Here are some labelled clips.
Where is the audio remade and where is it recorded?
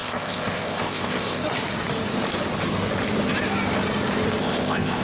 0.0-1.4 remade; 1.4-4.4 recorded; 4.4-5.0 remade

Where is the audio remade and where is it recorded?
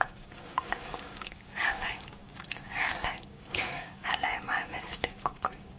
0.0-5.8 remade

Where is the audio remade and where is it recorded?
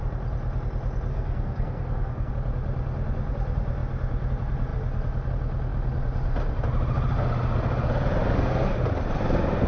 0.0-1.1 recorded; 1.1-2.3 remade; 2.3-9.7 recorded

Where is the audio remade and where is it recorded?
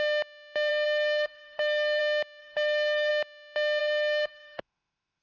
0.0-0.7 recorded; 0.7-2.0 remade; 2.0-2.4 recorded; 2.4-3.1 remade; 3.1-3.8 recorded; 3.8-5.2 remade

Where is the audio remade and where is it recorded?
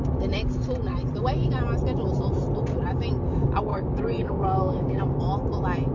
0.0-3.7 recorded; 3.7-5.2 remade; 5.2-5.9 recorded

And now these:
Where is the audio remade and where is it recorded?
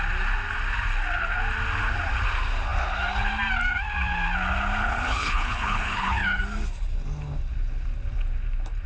0.0-4.8 recorded; 4.8-6.4 remade; 6.4-8.9 recorded